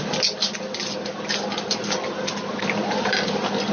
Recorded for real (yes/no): yes